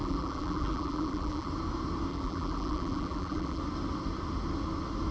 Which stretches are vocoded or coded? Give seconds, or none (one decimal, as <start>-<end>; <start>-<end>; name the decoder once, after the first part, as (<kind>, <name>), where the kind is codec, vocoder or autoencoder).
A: 0.0-1.5 (vocoder, BigVGAN v2); 2.1-3.6